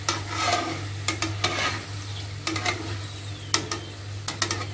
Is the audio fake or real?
real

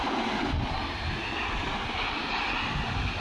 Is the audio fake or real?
real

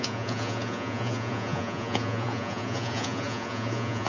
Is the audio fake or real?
fake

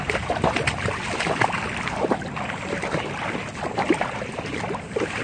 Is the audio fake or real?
fake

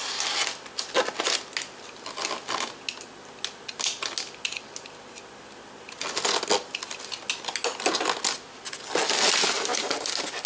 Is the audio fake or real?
real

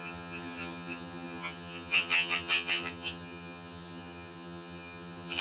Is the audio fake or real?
fake